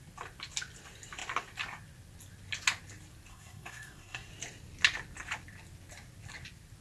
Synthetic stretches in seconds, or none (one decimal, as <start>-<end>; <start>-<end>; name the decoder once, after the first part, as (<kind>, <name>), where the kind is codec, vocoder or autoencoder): 3.3-4.3 (codec, SNAC)